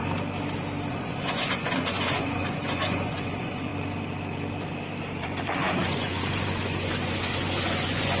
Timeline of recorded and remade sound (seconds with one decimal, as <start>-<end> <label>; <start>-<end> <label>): 0.0-0.9 recorded; 0.9-3.7 remade; 3.7-5.2 recorded; 5.2-8.2 remade